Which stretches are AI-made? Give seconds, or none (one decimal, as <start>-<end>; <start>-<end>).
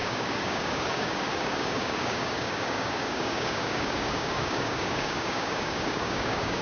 0.0-6.6